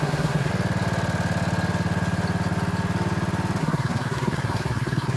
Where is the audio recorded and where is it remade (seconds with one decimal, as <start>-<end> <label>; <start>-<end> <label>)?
0.0-0.5 remade; 0.5-3.6 recorded; 3.6-5.2 remade